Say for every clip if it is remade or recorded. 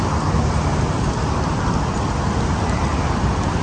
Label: recorded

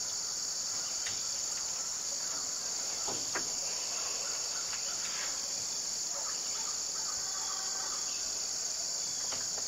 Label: recorded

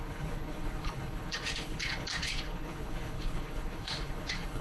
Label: remade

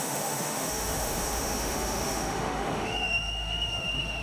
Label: remade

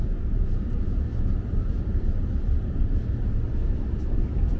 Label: remade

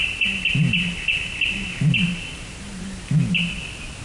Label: recorded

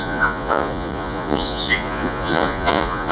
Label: remade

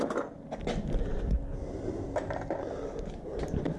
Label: recorded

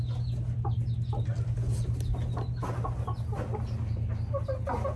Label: recorded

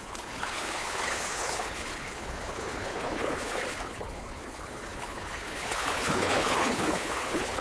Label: remade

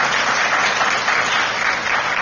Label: remade